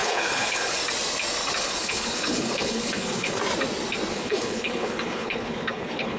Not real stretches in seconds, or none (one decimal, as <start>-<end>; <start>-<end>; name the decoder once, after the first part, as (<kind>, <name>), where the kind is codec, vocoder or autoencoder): 0.0-0.8 (codec, HILCodec); 1.6-3.4; 4.1-6.2